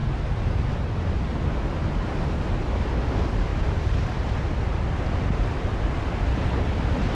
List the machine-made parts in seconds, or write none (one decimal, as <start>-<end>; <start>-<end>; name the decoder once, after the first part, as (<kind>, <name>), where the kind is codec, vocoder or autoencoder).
3.5-7.1 (vocoder, BigVGAN v2)